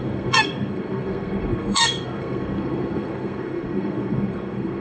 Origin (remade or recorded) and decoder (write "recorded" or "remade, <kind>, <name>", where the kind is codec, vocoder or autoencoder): remade, codec, SNAC